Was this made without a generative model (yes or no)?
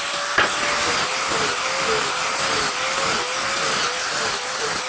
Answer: yes